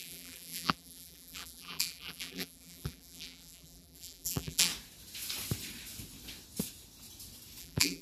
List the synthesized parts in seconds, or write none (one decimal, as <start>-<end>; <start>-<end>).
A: 0.0-4.7; 7.6-8.0